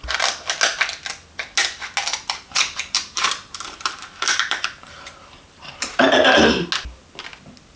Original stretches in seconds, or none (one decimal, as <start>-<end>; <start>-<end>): 0.0-2.1; 6.7-7.8